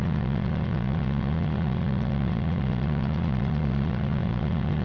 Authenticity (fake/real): fake